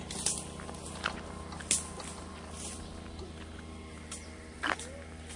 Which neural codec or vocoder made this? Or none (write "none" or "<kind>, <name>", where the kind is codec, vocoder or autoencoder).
none